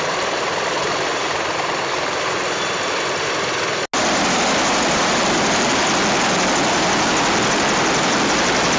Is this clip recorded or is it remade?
recorded